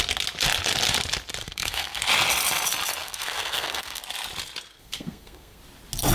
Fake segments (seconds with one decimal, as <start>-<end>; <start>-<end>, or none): 1.4-2.0; 3.0-4.0; 4.7-5.6